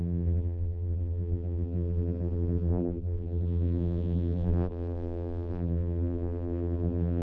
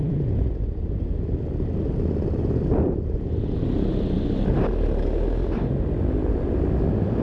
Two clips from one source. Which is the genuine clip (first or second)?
second